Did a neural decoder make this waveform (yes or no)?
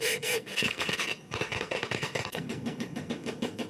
yes